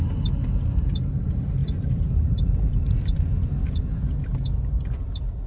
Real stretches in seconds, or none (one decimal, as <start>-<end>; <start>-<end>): 0.0-1.6; 3.7-5.5